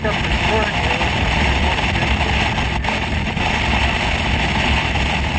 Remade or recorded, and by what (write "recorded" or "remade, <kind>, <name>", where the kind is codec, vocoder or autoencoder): recorded